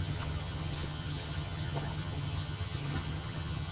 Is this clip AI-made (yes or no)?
yes